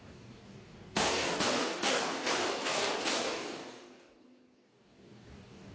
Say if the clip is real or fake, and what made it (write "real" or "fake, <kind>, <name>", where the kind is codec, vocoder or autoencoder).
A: fake, codec, DAC